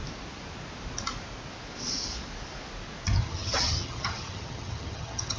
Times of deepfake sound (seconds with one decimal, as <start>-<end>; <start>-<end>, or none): 3.2-5.4

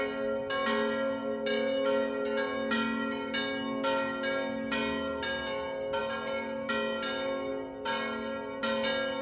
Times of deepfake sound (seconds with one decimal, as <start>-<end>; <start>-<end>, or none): none

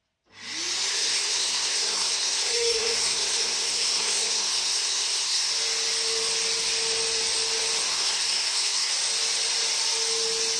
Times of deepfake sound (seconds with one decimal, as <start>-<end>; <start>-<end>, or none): 0.9-5.5; 7.9-8.9

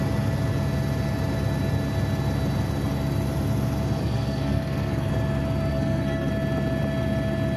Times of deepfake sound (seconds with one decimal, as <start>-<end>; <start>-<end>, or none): 4.0-5.1; 5.7-6.3

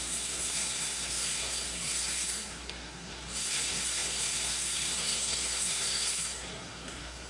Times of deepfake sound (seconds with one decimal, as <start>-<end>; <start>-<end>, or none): 0.0-7.3